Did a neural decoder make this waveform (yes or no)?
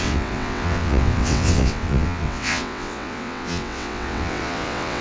yes